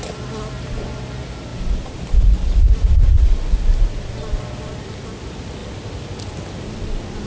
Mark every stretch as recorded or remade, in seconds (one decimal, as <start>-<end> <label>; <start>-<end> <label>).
0.0-7.3 recorded